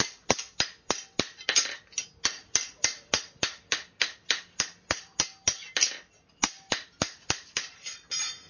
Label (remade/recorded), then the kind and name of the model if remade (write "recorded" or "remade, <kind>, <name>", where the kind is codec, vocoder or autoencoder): recorded